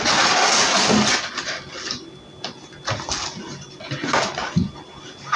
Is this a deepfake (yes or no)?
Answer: no